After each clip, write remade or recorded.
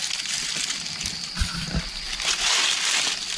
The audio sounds recorded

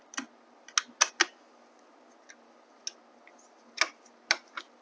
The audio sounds recorded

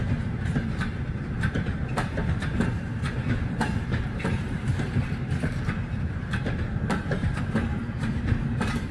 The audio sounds remade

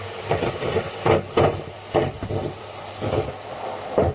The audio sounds remade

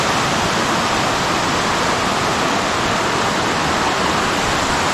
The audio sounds recorded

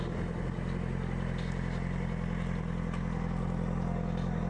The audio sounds recorded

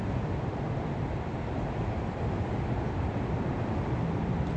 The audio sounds remade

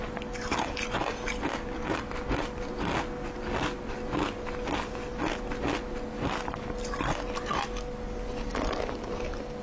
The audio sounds recorded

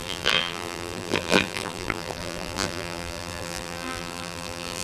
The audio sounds remade